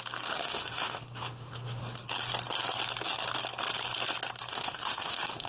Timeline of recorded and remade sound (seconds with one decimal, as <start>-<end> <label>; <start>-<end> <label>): 0.0-0.4 recorded; 0.4-1.8 remade; 1.8-4.5 recorded; 4.5-5.5 remade